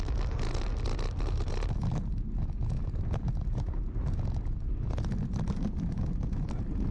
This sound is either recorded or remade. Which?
recorded